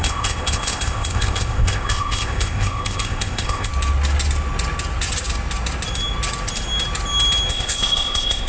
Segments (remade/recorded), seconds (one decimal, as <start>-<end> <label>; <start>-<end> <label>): 0.0-3.7 remade; 3.7-7.5 recorded; 7.5-8.5 remade